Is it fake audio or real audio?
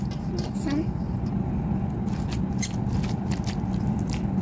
real